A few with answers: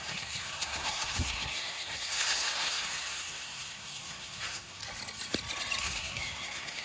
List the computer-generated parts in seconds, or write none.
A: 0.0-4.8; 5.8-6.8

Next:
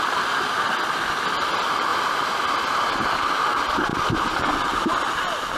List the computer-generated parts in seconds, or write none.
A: none

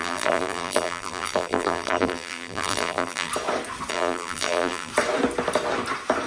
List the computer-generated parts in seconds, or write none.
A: 0.0-3.3; 3.9-4.9

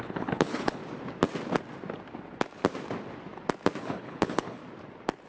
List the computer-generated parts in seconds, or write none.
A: 0.0-0.8; 3.8-4.6

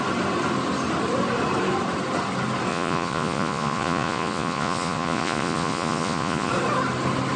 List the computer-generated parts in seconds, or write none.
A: 2.7-6.5